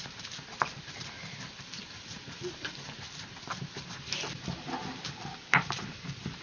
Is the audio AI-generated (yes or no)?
yes